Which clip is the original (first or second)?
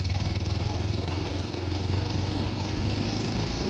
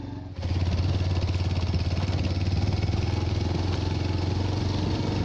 second